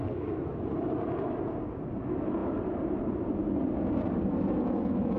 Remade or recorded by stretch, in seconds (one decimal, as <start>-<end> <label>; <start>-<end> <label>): 0.0-5.2 recorded